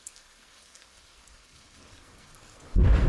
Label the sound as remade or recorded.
remade